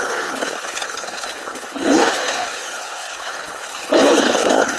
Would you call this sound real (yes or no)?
no